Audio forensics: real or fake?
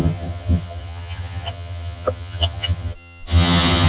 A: fake